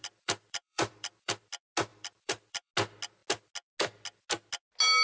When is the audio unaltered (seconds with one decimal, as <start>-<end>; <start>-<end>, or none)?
1.4-1.9; 2.7-5.0

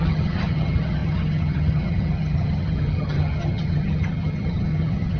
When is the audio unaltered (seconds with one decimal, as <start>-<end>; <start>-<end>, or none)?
none